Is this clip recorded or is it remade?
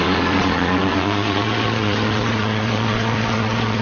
remade